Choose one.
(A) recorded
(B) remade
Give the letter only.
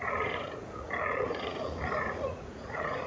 B